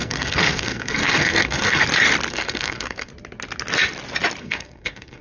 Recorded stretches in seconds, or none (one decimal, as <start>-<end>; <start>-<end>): 1.8-2.3; 3.1-4.4